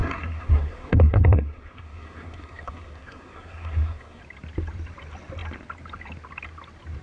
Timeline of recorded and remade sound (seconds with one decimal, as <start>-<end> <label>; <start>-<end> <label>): 0.0-4.2 remade; 4.2-7.0 recorded